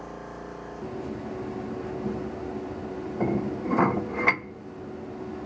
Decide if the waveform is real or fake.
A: real